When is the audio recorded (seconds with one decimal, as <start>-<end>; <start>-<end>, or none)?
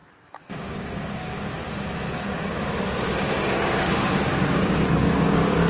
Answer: 1.5-3.4